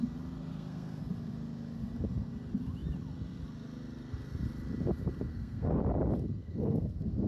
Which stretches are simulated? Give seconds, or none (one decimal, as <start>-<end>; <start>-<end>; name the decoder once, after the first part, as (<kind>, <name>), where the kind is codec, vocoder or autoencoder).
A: 0.5-1.0 (codec, SNAC); 5.3-5.8; 6.4-7.3

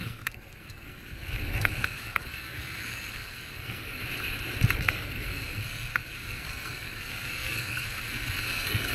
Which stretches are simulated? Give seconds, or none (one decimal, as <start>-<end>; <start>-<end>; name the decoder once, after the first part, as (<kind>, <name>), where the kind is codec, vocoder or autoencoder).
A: 0.0-4.0 (codec, SNAC); 4.8-8.9

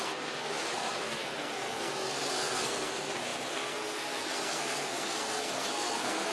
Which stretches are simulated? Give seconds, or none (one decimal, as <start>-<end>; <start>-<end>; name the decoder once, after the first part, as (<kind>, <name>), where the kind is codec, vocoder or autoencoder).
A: 0.0-6.3 (codec, SNAC)

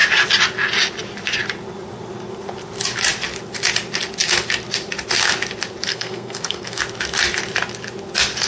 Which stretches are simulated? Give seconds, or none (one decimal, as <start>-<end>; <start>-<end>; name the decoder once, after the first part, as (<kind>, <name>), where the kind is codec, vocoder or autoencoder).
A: 5.9-6.8 (codec, SNAC)

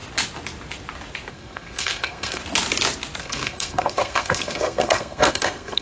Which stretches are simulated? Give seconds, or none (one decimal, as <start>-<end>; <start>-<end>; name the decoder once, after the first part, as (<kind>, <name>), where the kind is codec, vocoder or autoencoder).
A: 1.3-2.4 (codec, SNAC); 3.2-5.8